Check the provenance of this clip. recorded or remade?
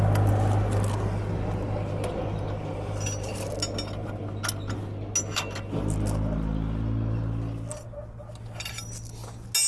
recorded